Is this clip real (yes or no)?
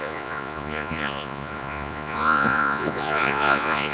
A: no